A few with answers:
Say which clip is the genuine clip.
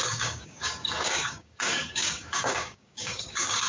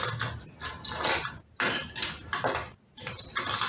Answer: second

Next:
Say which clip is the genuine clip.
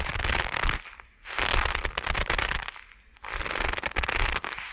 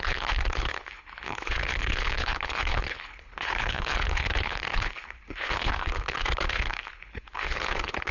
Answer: first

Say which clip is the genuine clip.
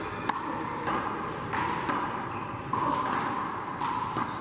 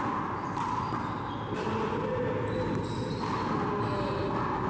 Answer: second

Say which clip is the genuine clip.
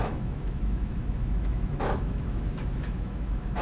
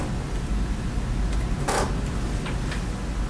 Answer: second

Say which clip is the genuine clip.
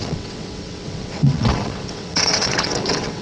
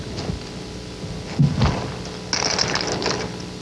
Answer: second